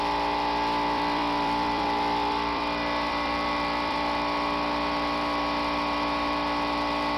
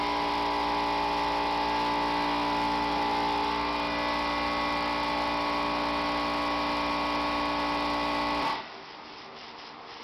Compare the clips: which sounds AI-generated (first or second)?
first